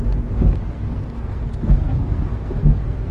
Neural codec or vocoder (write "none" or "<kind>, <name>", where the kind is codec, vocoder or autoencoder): codec, SNAC